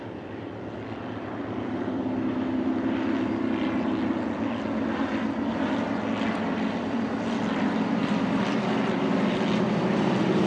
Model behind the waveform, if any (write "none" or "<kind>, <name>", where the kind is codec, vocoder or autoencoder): vocoder, BigVGAN v2